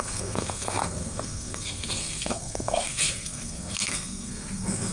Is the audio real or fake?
fake